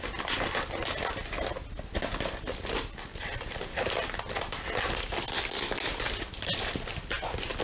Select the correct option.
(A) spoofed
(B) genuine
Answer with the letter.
B